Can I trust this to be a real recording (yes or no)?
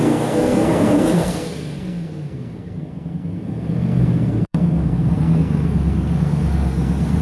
no